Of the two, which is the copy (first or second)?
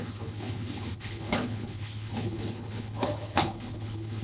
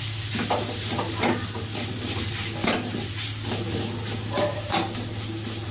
first